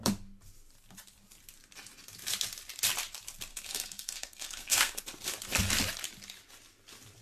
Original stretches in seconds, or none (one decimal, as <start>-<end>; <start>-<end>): 0.0-3.5; 5.0-7.2